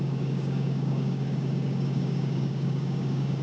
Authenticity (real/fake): fake